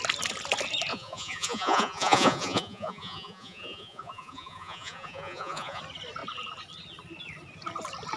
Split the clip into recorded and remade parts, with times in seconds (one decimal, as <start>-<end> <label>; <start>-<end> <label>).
0.0-0.9 recorded; 0.9-5.8 remade; 5.8-8.2 recorded